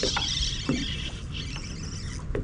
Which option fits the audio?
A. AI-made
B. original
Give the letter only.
B